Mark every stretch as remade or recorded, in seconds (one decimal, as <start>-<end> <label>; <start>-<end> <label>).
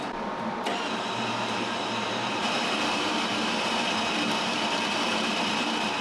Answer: 0.0-6.0 remade